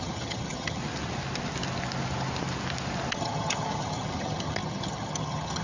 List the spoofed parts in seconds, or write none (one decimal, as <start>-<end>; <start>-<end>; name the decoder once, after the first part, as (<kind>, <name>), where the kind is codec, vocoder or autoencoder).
0.0-0.8 (vocoder, HiFi-GAN); 3.1-5.6

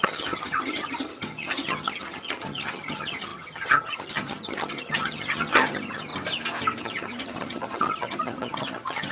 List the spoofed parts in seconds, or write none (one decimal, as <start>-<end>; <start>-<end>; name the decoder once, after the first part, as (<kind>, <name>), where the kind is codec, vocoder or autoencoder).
0.0-6.1 (vocoder, HiFi-GAN); 6.8-9.1